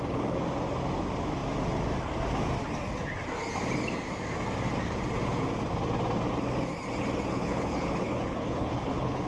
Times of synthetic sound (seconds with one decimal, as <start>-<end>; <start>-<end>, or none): 7.3-9.3